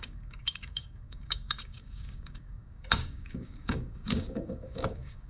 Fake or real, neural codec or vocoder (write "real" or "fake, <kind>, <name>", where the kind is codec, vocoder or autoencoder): fake, codec, DAC